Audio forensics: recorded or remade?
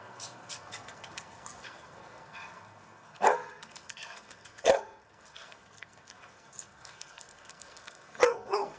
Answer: remade